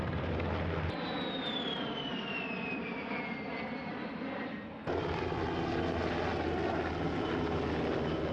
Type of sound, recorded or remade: recorded